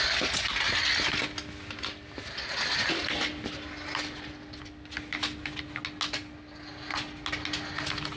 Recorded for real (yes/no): yes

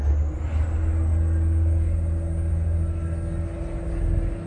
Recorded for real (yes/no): yes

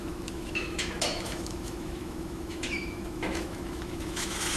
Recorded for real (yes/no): no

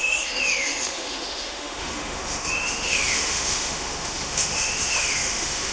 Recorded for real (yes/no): no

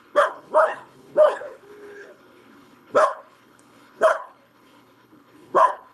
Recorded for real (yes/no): no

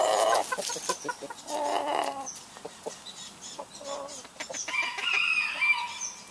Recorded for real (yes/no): yes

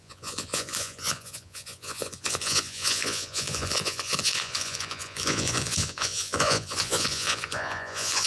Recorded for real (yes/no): no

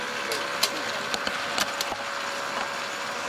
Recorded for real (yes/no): yes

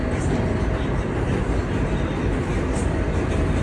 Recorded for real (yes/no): yes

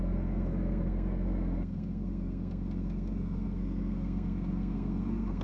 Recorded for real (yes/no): no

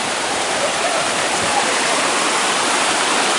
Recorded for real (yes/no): no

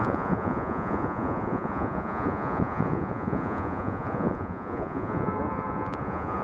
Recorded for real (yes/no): no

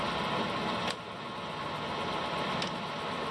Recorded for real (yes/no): yes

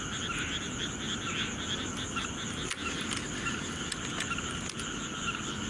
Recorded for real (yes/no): yes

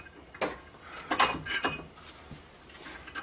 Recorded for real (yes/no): yes